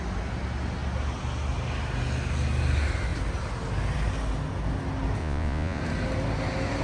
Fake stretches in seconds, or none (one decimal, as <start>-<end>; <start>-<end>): 5.2-5.8